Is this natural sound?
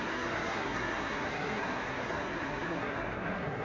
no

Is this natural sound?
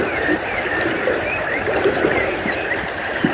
no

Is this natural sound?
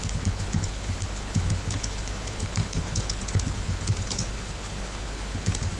no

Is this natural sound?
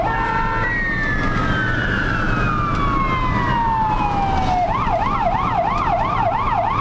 yes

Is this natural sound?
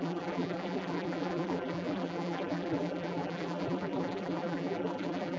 no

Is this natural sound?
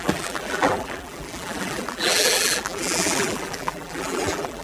no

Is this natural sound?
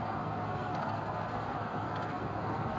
no